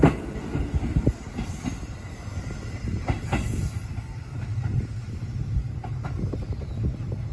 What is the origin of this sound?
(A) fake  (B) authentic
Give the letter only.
B